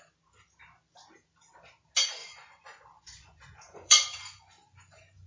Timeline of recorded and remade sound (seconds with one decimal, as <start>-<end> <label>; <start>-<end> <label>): 0.0-2.2 recorded; 2.2-5.3 remade